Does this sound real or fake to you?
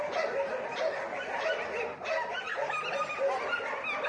real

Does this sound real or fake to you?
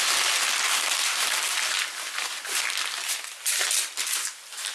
real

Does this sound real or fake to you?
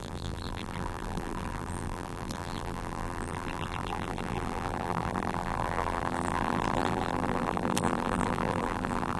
fake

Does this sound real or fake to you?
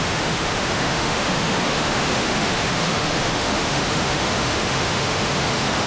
fake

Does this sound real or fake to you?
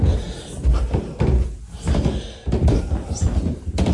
real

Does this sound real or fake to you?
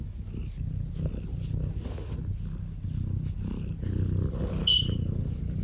real